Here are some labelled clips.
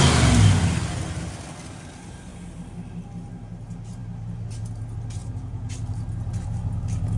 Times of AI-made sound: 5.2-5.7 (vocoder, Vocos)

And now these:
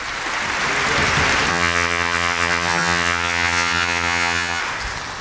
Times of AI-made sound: 1.5-4.6 (vocoder, HiFi-GAN)

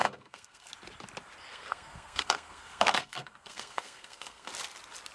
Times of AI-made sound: 0.0-0.7 (codec, SNAC); 1.5-4.5

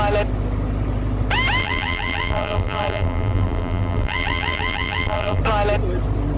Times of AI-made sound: 1.6-5.4 (vocoder, BigVGAN v2)

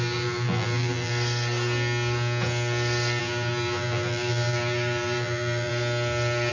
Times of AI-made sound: 0.0-1.1 (vocoder, BigVGAN v2); 3.2-5.7